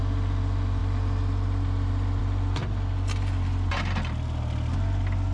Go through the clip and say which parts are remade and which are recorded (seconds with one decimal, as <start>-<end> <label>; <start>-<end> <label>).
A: 0.0-0.8 recorded; 0.8-2.2 remade; 2.2-2.6 recorded; 2.6-3.7 remade; 3.7-5.3 recorded